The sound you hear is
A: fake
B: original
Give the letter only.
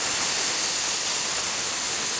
B